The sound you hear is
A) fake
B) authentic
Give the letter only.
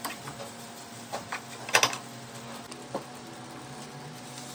B